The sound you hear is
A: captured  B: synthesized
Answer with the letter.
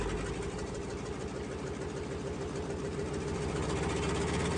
A